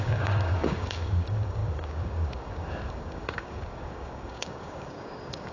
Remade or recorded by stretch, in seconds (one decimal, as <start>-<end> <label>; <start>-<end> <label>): 0.0-5.5 remade

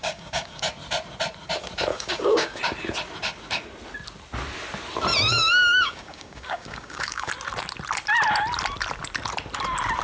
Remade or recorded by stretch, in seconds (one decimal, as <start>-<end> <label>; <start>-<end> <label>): 0.0-0.7 remade; 0.7-1.9 recorded; 1.9-2.6 remade; 2.6-5.3 recorded; 5.3-7.3 remade; 7.3-10.0 recorded

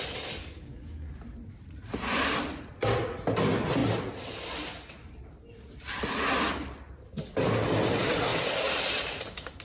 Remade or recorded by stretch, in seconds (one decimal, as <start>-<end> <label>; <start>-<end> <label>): 0.0-0.4 recorded; 0.4-1.1 remade; 1.1-9.6 recorded

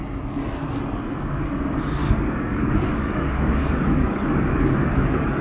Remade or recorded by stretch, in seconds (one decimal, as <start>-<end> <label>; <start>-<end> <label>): 0.0-2.0 recorded; 2.0-5.4 remade

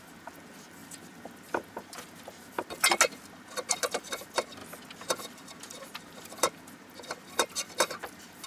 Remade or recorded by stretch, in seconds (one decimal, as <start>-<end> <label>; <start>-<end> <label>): 0.0-8.5 recorded

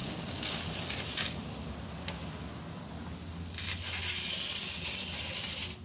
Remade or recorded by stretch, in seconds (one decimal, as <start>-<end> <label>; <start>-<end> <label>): 0.0-0.6 remade; 0.6-5.8 recorded

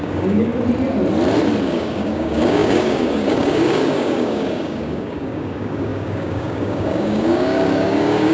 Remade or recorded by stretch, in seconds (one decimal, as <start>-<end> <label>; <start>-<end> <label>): 0.0-0.5 remade; 0.5-1.6 recorded; 1.6-8.3 remade